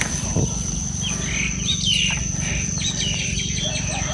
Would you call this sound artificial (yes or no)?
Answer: no